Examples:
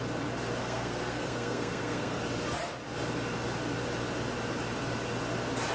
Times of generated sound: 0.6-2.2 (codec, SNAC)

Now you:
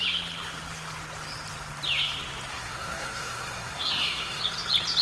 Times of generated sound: 2.5-4.4 (codec, SNAC)

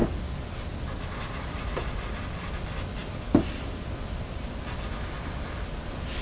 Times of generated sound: none

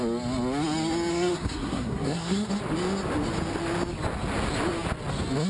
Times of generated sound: 1.1-2.5 (codec, SNAC)

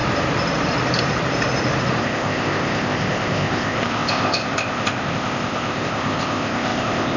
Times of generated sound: 2.0-7.2 (codec, ZipCodec)